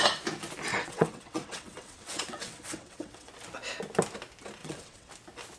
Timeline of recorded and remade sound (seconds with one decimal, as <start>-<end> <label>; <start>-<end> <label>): 0.0-0.7 recorded; 0.7-3.3 remade; 3.3-4.6 recorded; 4.6-5.1 remade; 5.1-5.6 recorded